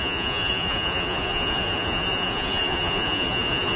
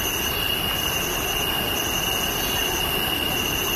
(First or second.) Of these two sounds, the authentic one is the second